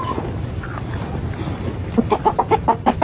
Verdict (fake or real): real